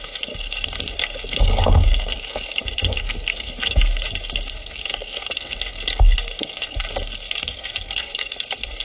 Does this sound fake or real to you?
fake